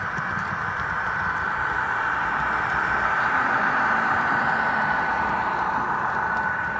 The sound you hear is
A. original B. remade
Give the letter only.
B